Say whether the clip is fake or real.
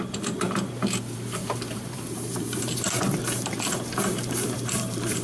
fake